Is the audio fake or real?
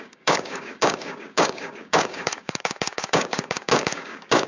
fake